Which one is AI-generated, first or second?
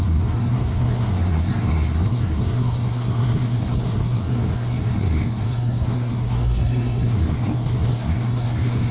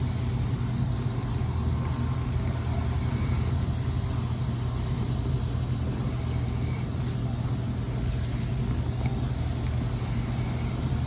first